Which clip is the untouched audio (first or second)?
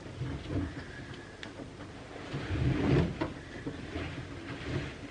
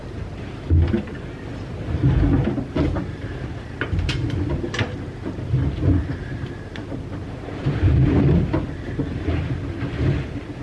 first